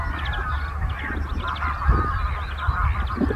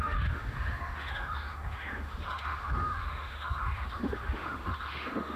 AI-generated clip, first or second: second